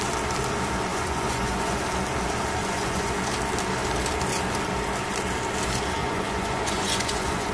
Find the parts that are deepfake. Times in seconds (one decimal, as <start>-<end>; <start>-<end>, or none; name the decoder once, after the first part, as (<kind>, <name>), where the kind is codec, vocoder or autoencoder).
0.9-1.8 (vocoder, Vocos); 2.6-3.1; 6.0-7.5